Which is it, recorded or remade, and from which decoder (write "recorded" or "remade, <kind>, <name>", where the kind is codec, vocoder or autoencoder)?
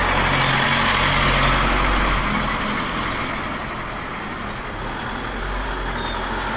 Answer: recorded